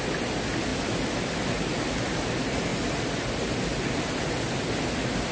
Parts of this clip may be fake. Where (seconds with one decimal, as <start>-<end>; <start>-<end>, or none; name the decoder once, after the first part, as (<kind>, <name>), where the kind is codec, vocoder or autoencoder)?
none